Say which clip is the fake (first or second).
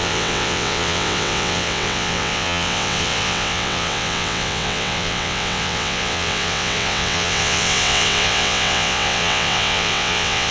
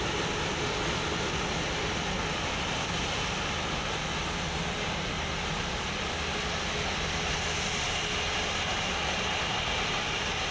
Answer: first